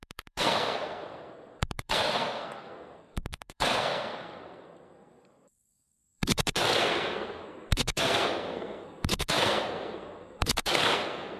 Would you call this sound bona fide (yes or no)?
no